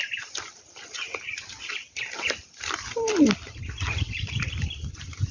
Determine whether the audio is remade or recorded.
remade